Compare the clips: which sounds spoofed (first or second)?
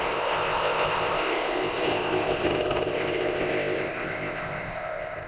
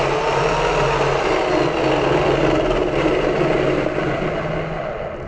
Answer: first